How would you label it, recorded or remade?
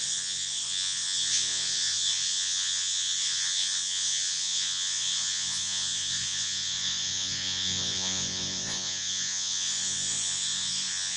remade